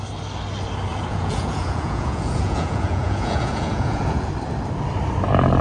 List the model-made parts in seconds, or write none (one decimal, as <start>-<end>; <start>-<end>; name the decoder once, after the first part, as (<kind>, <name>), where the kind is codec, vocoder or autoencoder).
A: 0.9-4.3 (vocoder, Vocos)